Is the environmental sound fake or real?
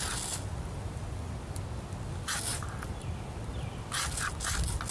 real